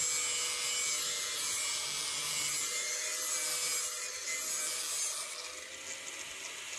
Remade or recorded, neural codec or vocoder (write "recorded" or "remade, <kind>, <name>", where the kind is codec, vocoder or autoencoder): recorded